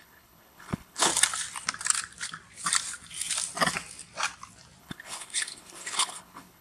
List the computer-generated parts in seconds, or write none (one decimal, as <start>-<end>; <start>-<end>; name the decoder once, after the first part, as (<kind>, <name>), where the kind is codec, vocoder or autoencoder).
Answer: 0.0-1.1 (codec, HILCodec); 4.8-6.6